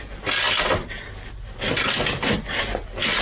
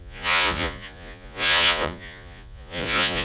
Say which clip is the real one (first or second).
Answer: first